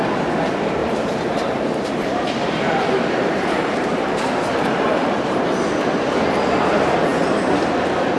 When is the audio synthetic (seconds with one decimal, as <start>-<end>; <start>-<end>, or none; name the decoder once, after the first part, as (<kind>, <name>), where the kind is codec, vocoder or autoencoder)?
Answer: 0.8-5.7 (vocoder, BigVGAN v2)